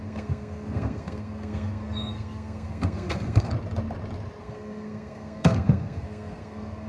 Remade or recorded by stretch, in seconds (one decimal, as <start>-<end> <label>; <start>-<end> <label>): 0.0-3.5 remade; 3.5-4.4 recorded; 4.4-6.9 remade